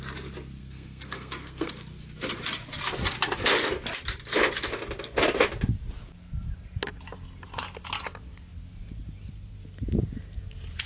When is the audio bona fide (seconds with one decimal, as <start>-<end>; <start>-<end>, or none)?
0.0-0.6; 1.7-10.9